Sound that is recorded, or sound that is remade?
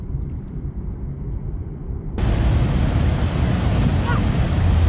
recorded